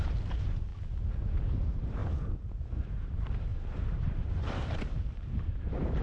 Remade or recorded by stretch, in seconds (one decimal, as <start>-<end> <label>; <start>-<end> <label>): 0.0-0.7 remade; 0.7-1.3 recorded; 1.3-2.0 remade; 2.0-2.7 recorded; 2.7-6.0 remade